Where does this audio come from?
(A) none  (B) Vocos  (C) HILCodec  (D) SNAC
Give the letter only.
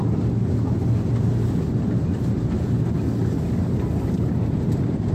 A